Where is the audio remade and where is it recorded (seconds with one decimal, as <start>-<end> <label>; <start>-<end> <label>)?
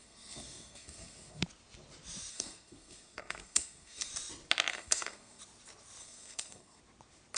0.0-1.4 remade; 1.4-2.3 recorded; 2.3-4.1 remade; 4.1-4.7 recorded; 4.7-5.4 remade; 5.4-6.0 recorded; 6.0-6.8 remade; 6.8-7.4 recorded